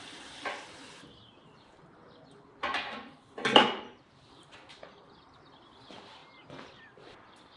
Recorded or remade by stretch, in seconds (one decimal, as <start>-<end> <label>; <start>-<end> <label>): 0.0-6.2 remade; 6.2-6.8 recorded; 6.8-7.6 remade